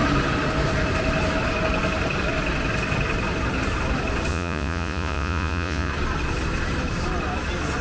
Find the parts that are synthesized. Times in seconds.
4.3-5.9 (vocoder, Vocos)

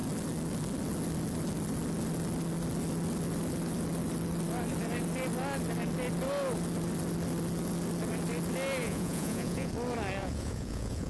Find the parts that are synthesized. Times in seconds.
8.8-9.7 (vocoder, Vocos); 10.2-11.1

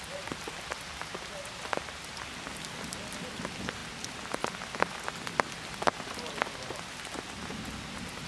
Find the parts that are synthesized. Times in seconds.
none

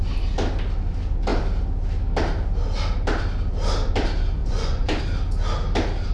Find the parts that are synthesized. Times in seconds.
4.4-5.0 (vocoder, Vocos)